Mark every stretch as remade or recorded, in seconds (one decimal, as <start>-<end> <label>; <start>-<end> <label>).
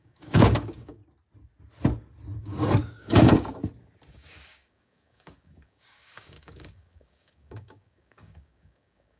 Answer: 0.0-1.0 remade; 1.0-2.4 recorded; 2.4-3.6 remade; 3.6-4.1 recorded; 4.1-9.2 remade